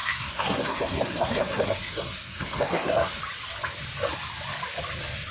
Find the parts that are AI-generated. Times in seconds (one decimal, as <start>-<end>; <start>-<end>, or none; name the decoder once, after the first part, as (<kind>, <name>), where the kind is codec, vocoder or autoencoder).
0.0-3.2 (codec, SNAC)